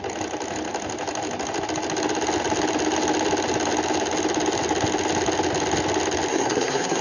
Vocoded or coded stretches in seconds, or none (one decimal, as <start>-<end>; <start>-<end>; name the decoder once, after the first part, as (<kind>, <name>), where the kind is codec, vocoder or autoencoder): 6.3-7.0 (codec, SNAC)